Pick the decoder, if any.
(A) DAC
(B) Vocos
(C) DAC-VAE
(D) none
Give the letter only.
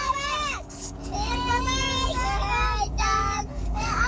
A